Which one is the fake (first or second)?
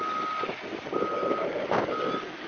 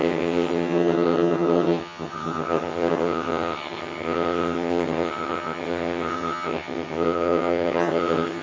second